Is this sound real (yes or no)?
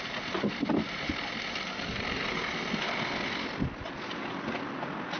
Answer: yes